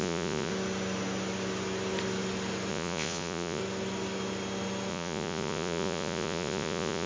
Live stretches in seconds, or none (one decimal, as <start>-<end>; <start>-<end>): 0.5-2.7; 3.6-4.9